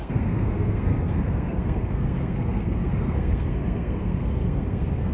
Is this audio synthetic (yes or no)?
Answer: yes